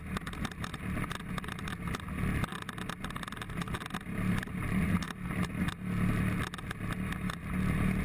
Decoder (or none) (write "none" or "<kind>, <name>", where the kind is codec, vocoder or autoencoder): none